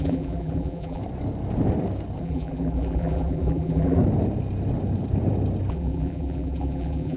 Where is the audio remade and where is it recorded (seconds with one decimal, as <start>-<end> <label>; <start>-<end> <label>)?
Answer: 0.0-1.0 remade; 1.0-2.2 recorded; 2.2-4.0 remade; 4.0-5.7 recorded; 5.7-7.2 remade